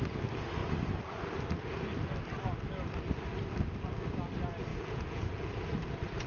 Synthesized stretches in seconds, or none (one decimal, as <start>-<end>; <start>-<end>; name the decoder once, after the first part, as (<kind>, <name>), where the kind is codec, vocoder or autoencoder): 4.7-5.6 (vocoder, Vocos)